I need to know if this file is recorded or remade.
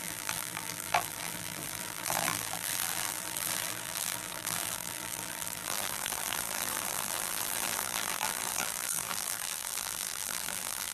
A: remade